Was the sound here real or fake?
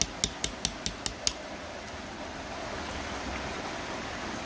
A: real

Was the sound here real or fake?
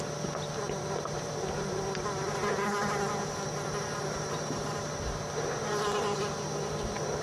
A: fake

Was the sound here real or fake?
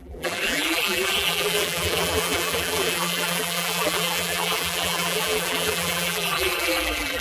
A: fake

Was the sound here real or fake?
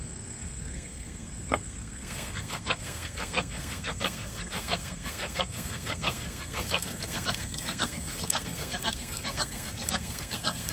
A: fake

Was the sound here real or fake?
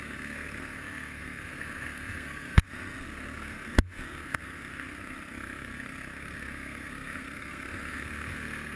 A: fake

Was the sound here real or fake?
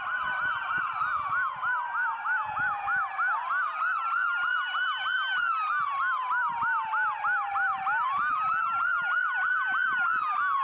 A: real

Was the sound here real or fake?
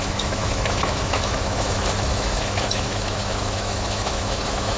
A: fake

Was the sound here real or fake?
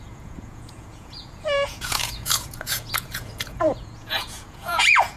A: fake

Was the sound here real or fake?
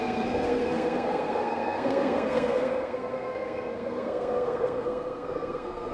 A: fake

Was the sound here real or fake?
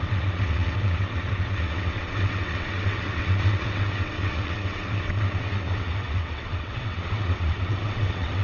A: fake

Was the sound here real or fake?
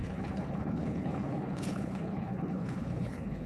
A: fake